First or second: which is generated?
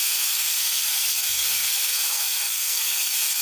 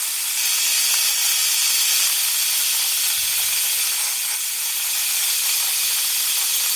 first